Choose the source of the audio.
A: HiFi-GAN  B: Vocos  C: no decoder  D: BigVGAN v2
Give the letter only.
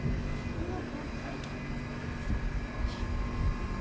C